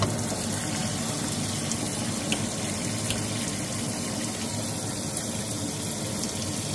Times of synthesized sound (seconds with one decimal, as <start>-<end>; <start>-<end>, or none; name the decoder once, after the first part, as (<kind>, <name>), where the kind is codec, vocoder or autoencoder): none

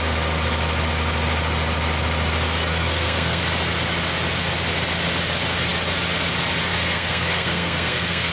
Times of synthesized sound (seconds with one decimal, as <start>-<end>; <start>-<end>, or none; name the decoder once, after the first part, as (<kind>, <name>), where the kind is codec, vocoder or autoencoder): 2.7-3.4 (codec, SNAC); 6.7-8.3